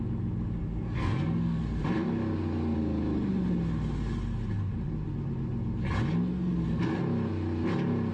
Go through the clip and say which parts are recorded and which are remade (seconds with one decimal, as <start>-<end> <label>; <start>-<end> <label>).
0.0-0.6 recorded; 0.6-1.8 remade; 1.8-6.3 recorded; 6.3-7.0 remade; 7.0-8.1 recorded